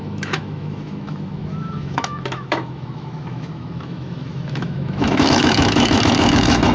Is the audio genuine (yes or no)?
no